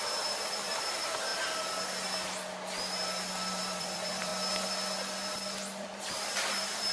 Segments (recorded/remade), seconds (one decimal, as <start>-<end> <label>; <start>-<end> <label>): 0.0-1.3 remade; 1.3-3.8 recorded; 3.8-4.3 remade; 4.3-5.8 recorded; 5.8-6.9 remade